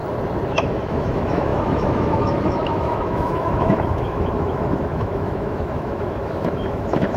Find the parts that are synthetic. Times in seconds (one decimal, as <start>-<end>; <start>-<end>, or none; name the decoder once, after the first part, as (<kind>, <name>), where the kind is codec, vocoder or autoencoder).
0.5-7.2 (autoencoder, DAC-VAE)